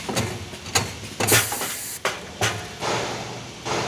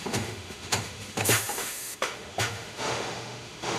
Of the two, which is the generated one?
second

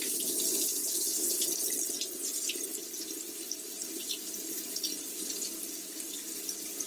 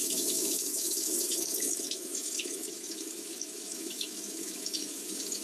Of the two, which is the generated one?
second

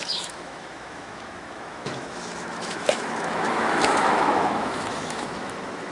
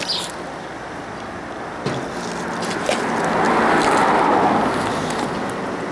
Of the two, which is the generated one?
first